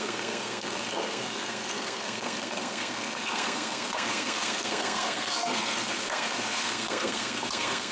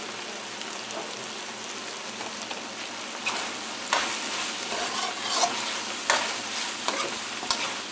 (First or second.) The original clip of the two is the second